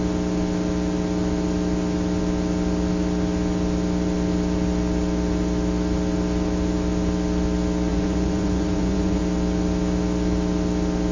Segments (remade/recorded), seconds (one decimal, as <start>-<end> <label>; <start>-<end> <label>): 0.0-7.9 recorded; 7.9-9.2 remade; 9.2-11.1 recorded